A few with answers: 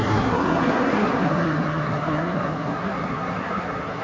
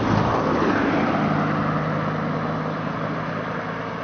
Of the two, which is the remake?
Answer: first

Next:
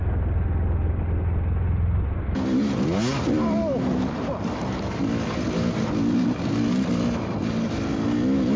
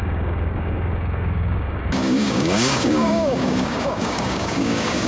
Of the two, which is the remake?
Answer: second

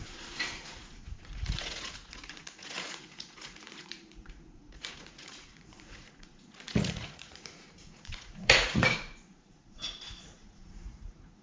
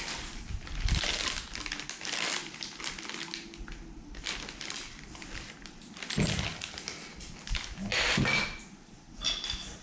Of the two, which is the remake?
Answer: first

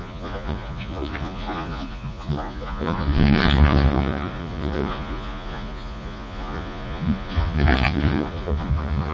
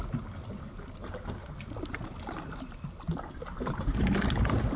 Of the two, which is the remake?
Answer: first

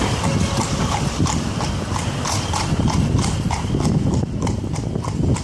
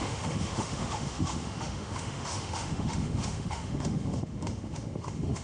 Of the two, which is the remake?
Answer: second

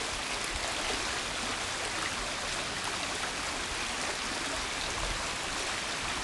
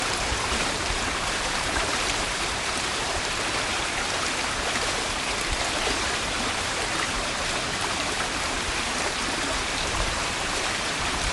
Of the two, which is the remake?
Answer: second